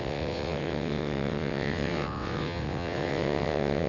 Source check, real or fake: fake